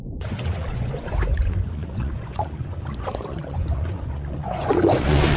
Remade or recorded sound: remade